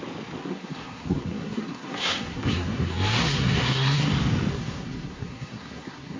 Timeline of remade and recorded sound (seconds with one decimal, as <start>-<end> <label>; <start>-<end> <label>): 0.0-0.4 recorded; 0.4-4.1 remade; 4.1-4.5 recorded; 4.5-6.2 remade